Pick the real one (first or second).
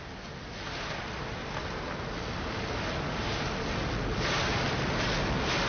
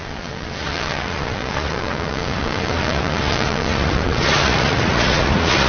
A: first